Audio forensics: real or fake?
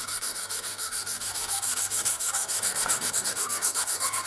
fake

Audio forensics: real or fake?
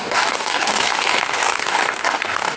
fake